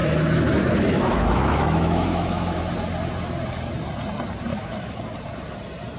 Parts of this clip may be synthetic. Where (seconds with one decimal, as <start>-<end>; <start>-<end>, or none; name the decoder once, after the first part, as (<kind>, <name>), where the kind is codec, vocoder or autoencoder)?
0.0-2.6 (autoencoder, DAC-VAE); 4.5-5.0